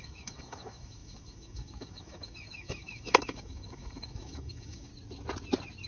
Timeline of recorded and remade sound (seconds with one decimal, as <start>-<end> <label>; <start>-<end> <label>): 0.0-4.9 remade; 4.9-5.9 recorded